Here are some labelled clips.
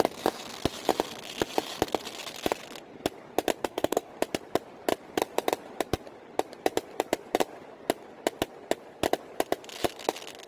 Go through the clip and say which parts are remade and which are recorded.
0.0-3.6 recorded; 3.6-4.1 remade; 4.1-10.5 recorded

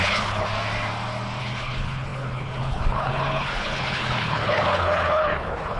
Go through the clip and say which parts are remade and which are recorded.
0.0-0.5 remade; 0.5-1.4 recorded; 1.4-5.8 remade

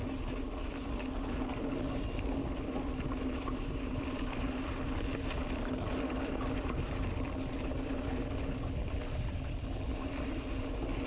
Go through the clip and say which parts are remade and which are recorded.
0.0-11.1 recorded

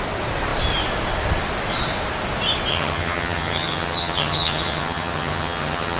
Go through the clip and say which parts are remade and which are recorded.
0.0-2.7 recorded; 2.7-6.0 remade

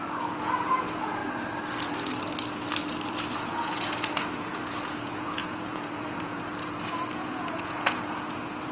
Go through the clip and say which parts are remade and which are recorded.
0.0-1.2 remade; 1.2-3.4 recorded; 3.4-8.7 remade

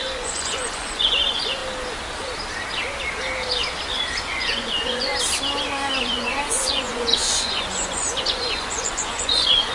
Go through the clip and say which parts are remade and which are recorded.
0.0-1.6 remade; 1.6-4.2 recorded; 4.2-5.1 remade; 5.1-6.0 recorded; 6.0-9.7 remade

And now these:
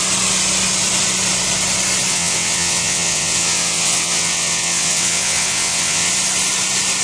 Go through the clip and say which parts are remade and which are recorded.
0.0-2.1 recorded; 2.1-6.1 remade; 6.1-7.0 recorded

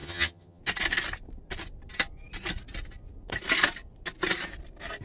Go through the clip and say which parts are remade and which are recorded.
0.0-0.6 remade; 0.6-5.0 recorded